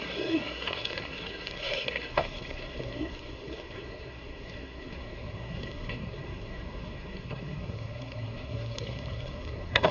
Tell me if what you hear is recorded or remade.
remade